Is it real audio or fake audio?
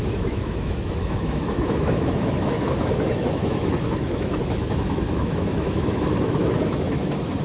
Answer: fake